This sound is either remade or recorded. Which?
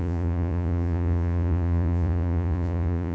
remade